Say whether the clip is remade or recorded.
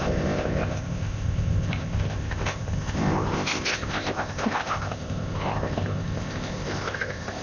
remade